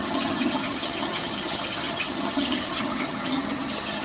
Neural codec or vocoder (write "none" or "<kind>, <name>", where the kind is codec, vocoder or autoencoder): vocoder, HiFi-GAN